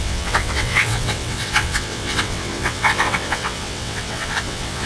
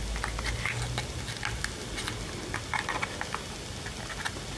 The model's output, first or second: first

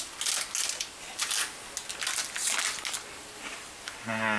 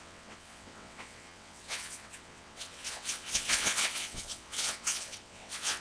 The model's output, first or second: second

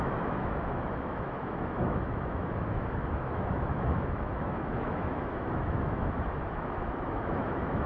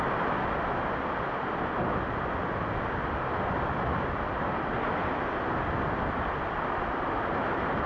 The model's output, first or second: first